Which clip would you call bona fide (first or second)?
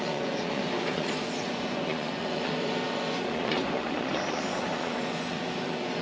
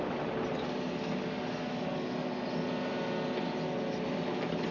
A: second